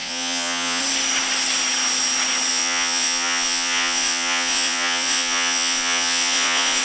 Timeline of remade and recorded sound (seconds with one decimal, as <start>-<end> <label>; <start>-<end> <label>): 0.0-0.8 remade; 0.8-2.5 recorded; 2.5-6.8 remade